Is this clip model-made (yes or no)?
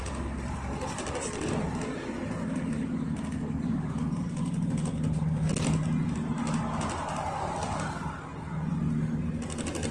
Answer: no